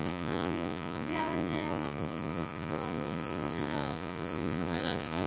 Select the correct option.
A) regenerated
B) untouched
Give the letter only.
A